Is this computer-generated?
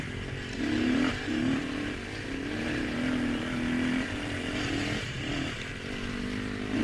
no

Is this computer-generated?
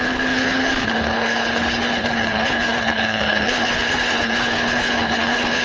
yes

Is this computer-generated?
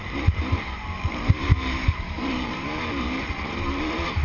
yes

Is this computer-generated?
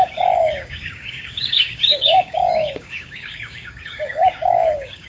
yes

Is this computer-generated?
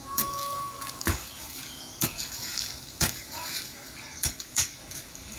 yes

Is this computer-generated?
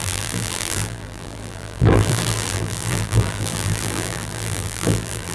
yes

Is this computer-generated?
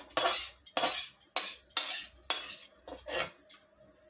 no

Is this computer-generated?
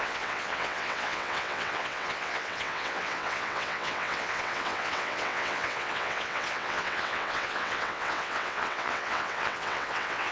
yes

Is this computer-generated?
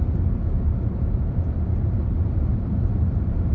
yes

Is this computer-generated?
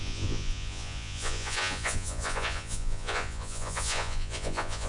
yes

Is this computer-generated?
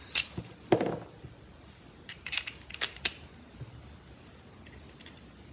no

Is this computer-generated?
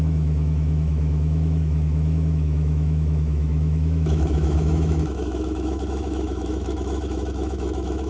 yes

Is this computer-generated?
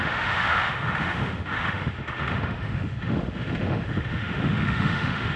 yes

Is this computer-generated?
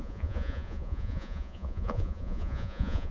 yes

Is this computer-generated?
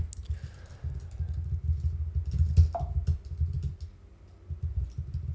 no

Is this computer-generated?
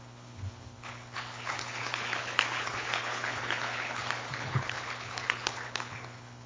yes